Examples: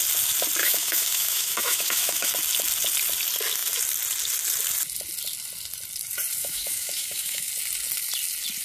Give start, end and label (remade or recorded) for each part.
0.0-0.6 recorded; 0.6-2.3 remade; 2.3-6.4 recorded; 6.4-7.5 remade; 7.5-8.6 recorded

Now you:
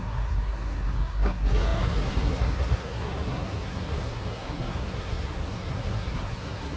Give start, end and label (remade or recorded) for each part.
0.0-6.8 remade

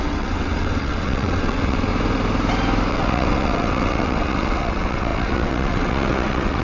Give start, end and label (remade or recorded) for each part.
0.0-1.9 remade; 1.9-2.9 recorded; 2.9-6.6 remade

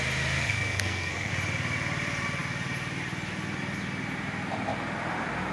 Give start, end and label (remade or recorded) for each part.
0.0-0.4 recorded; 0.4-1.3 remade; 1.3-5.5 recorded

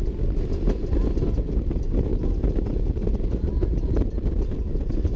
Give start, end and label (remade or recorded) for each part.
0.0-5.2 recorded

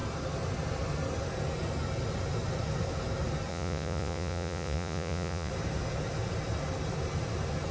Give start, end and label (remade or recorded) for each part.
0.0-3.5 recorded; 3.5-5.5 remade; 5.5-7.7 recorded

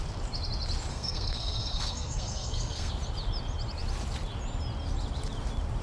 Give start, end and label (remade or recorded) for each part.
0.0-0.9 recorded; 0.9-2.9 remade; 2.9-5.8 recorded

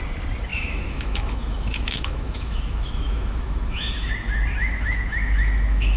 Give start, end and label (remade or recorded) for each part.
0.0-0.5 recorded; 0.5-4.1 remade; 4.1-4.6 recorded; 4.6-6.0 remade